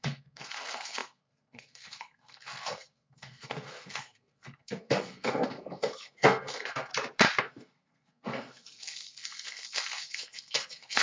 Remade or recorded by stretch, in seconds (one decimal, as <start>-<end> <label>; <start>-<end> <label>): 0.0-6.9 remade; 6.9-7.4 recorded; 7.4-11.0 remade